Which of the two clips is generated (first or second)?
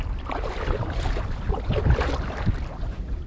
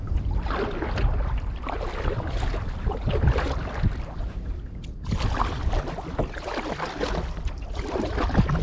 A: first